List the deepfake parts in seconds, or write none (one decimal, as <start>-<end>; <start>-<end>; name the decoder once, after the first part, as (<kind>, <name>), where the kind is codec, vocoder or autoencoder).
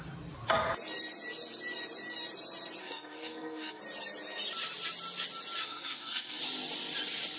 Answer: 2.8-3.8 (codec, SNAC); 5.6-6.4